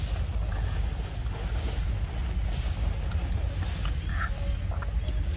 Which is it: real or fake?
real